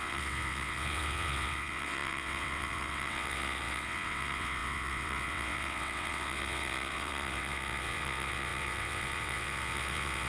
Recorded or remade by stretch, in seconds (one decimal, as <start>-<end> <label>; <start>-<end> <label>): 0.0-10.3 remade